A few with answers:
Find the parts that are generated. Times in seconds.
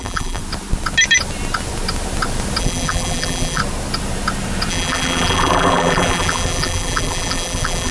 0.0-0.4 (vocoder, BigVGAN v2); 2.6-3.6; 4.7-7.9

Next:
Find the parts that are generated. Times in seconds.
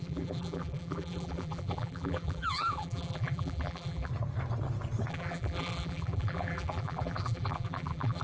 0.0-4.1 (vocoder, BigVGAN v2); 5.1-8.2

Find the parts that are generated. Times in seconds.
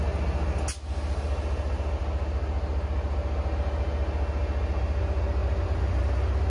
5.4-6.0 (vocoder, BigVGAN v2)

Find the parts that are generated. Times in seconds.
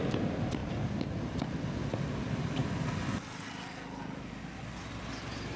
none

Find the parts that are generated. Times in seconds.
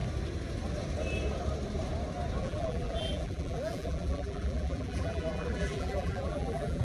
2.4-6.8 (vocoder, BigVGAN v2)